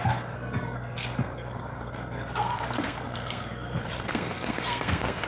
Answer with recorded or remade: remade